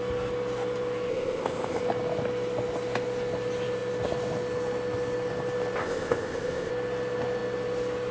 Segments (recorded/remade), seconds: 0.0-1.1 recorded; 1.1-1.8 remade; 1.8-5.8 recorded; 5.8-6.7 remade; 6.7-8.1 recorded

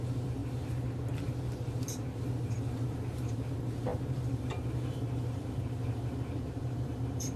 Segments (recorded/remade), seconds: 0.0-7.4 remade

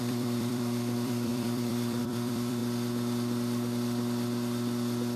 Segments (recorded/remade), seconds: 0.0-2.6 remade; 2.6-5.2 recorded

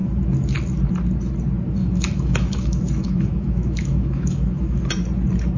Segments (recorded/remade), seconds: 0.0-1.8 recorded; 1.8-4.8 remade; 4.8-5.6 recorded